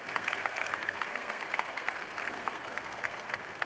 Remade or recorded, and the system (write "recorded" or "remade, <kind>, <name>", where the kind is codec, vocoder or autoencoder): remade, codec, SNAC